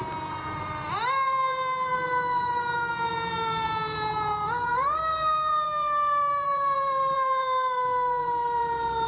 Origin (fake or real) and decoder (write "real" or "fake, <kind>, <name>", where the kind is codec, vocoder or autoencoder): fake, vocoder, BigVGAN v2